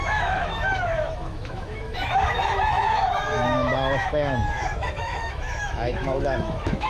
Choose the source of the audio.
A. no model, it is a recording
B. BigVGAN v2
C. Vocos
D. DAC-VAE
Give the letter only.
D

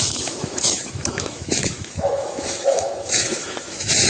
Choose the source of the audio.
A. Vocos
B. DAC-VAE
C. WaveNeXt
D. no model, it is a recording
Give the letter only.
B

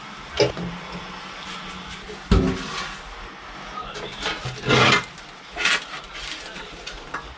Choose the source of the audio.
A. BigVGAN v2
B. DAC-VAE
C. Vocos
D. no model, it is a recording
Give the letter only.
D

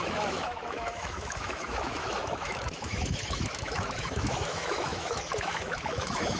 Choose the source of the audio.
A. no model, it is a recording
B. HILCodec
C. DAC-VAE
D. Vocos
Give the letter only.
C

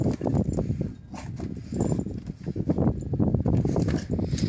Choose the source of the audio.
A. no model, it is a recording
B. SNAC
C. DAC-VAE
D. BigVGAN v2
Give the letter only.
A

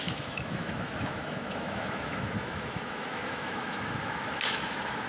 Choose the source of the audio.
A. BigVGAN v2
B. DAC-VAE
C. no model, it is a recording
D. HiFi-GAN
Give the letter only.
B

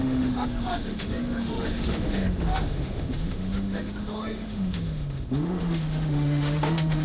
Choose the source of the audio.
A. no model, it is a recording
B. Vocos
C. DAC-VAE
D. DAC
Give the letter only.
C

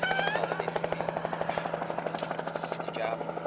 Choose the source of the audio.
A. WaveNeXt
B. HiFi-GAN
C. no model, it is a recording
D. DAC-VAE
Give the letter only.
C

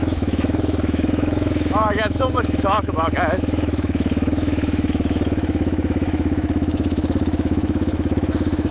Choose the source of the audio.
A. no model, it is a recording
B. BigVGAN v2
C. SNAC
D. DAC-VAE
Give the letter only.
D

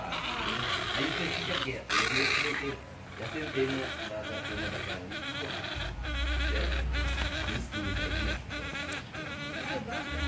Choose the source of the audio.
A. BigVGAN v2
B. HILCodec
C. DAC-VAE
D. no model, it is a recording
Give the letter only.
D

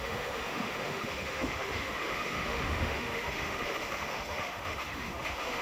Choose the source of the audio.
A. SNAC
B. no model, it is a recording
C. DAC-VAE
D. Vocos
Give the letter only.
C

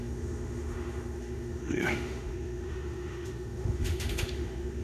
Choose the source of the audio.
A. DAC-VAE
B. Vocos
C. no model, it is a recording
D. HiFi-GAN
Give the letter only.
A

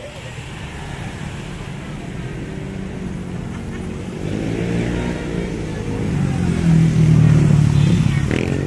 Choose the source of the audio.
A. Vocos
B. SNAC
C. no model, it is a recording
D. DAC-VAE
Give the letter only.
C